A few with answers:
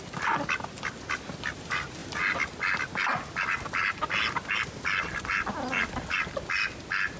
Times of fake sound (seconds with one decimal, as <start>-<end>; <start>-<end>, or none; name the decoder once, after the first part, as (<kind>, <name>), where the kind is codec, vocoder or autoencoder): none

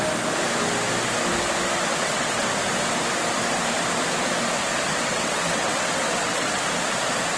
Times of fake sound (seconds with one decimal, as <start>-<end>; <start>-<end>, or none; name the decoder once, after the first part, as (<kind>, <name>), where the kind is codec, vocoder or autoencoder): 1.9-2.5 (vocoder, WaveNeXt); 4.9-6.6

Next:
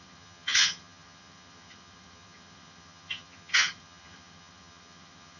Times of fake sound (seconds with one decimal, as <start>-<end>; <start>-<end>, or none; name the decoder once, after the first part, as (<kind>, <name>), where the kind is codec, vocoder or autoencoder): 0.0-5.4 (vocoder, HiFi-GAN)

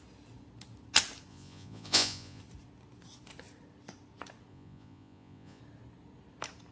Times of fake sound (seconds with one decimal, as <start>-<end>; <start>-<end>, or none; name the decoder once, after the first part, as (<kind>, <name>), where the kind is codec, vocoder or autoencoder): 1.3-2.4 (vocoder, Vocos); 4.5-5.6

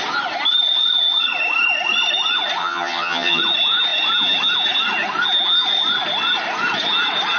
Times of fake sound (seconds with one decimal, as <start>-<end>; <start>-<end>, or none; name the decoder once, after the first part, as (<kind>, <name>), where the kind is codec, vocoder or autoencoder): 2.6-3.4 (vocoder, HiFi-GAN)

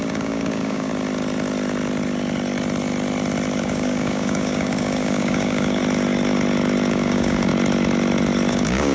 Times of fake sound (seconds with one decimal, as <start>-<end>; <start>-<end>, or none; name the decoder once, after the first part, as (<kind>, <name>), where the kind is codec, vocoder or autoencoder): 0.0-0.9 (codec, DAC); 3.6-5.8; 6.9-7.5; 8.5-8.9

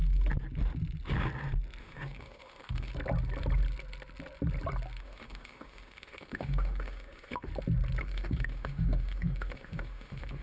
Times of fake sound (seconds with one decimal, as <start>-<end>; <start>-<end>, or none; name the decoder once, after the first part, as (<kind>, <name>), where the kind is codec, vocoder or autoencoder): 1.8-2.9 (autoencoder, DAC-VAE); 5.0-7.5; 8.0-10.4

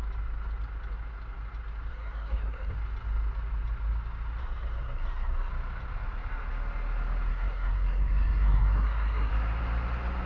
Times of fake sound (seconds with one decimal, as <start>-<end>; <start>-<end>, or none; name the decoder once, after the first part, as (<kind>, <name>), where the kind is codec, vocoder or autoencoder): 1.9-2.7 (codec, SNAC); 4.4-5.5; 7.3-9.3